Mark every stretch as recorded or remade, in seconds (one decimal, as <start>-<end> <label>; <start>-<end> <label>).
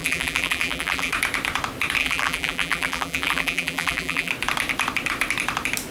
0.0-1.1 remade; 1.1-2.0 recorded; 2.0-4.3 remade; 4.3-5.9 recorded